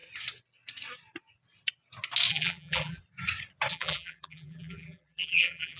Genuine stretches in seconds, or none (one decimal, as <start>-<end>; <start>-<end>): 0.0-2.3; 3.0-3.7